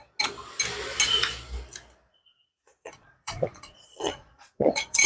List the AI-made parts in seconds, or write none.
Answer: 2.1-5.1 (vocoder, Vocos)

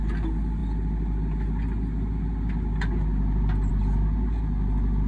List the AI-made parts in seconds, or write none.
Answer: none

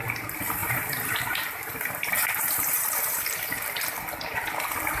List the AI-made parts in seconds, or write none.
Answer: 0.6-3.4 (vocoder, BigVGAN v2)